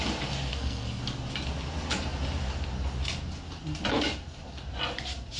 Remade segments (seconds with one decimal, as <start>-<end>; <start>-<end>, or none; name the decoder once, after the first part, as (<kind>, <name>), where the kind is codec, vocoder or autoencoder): 0.5-1.0 (codec, SNAC)